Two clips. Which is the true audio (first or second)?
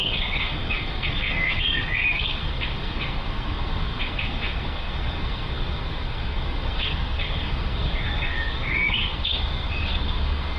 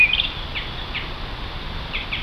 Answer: second